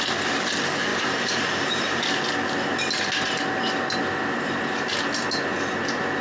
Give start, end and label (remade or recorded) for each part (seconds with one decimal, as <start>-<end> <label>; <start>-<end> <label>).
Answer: 0.0-0.9 recorded; 0.9-2.0 remade; 2.0-6.2 recorded

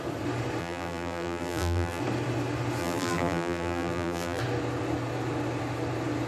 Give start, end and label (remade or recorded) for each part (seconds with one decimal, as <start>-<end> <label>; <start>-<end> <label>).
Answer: 0.0-0.6 recorded; 0.6-2.0 remade; 2.0-2.8 recorded; 2.8-4.4 remade; 4.4-6.3 recorded

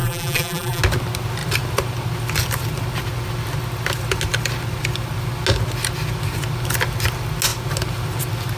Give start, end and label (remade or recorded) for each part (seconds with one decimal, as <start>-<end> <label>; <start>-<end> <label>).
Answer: 0.0-0.8 remade; 0.8-8.6 recorded

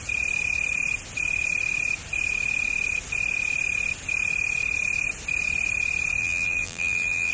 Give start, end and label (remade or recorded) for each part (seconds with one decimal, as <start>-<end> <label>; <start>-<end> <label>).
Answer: 0.0-6.2 recorded; 6.2-7.3 remade

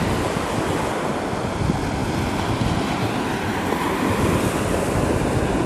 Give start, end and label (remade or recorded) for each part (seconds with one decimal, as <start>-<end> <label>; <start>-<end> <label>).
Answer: 0.0-5.7 recorded

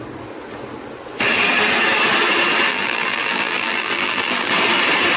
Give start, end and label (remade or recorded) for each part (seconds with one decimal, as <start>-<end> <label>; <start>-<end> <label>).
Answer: 0.0-2.7 recorded; 2.7-4.5 remade; 4.5-5.2 recorded

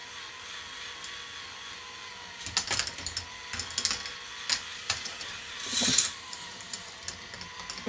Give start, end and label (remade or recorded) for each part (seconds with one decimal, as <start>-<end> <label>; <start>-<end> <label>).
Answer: 0.0-4.7 recorded; 4.7-6.9 remade; 6.9-7.9 recorded

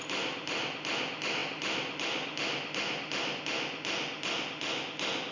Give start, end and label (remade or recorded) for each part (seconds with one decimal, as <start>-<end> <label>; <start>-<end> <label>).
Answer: 0.0-1.4 recorded; 1.4-3.4 remade; 3.4-5.3 recorded